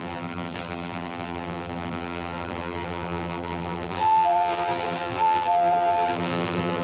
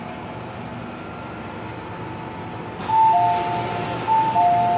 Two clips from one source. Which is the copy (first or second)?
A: first